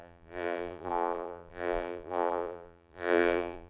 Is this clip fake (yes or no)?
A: yes